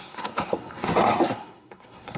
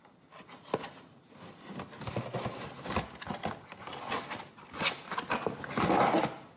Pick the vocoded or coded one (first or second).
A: first